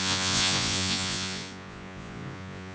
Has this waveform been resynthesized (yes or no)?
yes